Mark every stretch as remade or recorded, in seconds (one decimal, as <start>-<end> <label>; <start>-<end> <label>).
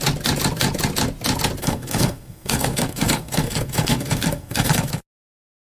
0.0-1.6 recorded; 1.6-5.0 remade; 5.0-5.6 recorded